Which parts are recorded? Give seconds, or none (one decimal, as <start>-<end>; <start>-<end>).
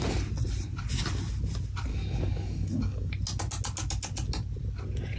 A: 0.0-1.9; 3.1-5.2